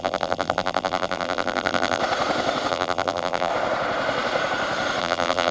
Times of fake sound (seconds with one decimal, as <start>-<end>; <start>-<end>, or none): 0.0-2.0; 2.7-3.5; 5.0-5.5